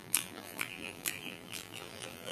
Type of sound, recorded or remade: remade